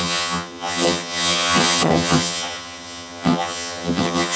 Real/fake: fake